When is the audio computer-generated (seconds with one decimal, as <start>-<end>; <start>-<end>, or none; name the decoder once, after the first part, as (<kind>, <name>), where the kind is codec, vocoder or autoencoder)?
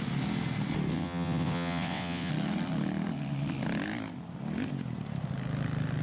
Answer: 0.9-2.3 (vocoder, WaveNeXt)